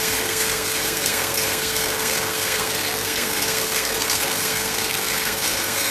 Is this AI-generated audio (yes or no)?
yes